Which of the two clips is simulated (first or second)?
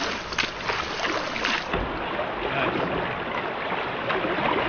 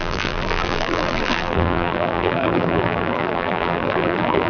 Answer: second